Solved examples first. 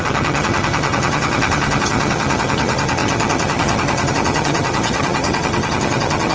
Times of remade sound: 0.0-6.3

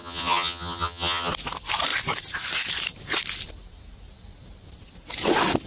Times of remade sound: 0.0-1.3

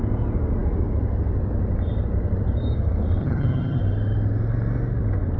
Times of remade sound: 3.2-3.8

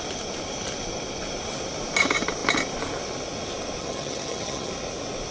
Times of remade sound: 3.8-4.7

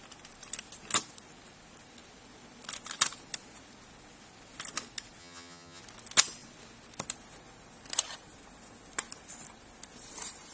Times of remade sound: 5.2-5.8

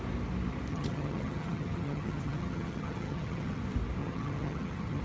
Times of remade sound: 0.7-3.6; 4.0-5.0

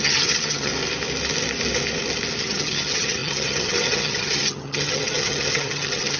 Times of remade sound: 0.0-0.7; 2.4-6.2